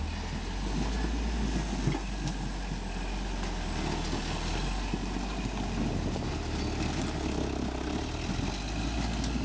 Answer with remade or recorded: recorded